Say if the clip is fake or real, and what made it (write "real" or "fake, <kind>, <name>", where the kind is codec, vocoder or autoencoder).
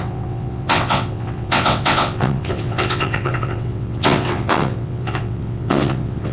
fake, vocoder, WaveNeXt